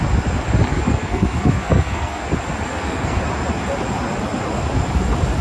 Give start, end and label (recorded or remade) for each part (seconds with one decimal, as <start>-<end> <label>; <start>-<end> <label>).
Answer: 0.0-0.7 recorded; 0.7-2.3 remade; 2.3-2.7 recorded; 2.7-3.2 remade; 3.2-5.4 recorded